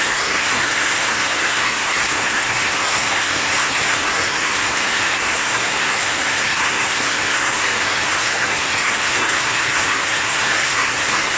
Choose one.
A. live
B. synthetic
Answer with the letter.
B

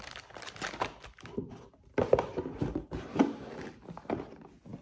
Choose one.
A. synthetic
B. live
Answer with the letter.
B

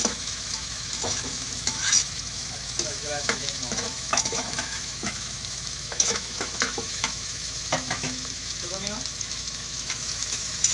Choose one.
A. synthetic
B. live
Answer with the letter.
A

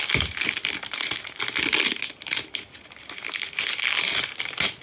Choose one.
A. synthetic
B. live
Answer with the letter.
B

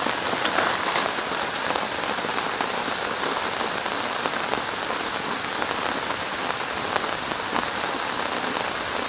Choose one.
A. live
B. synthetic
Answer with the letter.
A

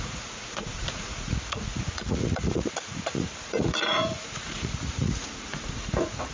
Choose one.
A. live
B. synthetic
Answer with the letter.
B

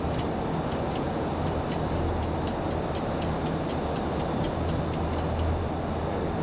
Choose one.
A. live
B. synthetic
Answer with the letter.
A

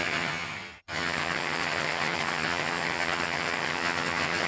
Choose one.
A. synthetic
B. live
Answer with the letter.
A